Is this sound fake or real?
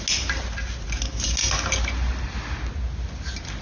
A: real